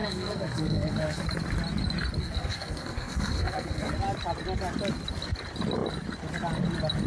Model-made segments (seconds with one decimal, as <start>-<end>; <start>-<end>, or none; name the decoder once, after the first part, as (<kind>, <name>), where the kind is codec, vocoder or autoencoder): 0.0-1.2 (codec, SNAC); 2.2-3.9